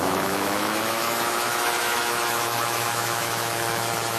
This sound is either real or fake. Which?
fake